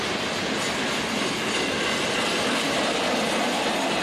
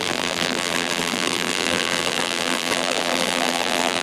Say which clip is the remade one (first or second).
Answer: second